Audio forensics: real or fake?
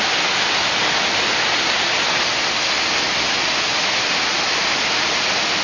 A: real